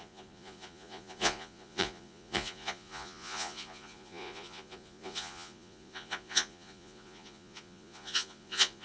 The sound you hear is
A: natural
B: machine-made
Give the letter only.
B